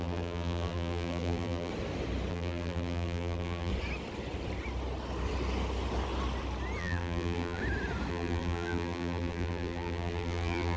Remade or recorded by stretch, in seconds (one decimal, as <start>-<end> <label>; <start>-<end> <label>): 0.0-1.7 remade; 1.7-2.3 recorded; 2.3-3.7 remade; 3.7-6.8 recorded; 6.8-7.6 remade; 7.6-8.1 recorded; 8.1-10.8 remade